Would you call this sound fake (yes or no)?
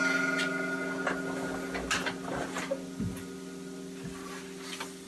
no